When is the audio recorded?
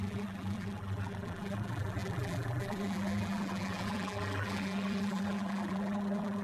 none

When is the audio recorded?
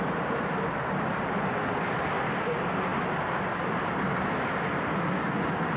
0.0-2.9; 3.9-5.8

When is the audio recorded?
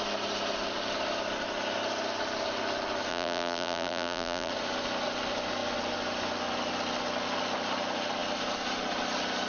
0.0-3.1; 4.5-9.5